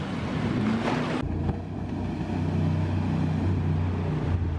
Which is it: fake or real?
real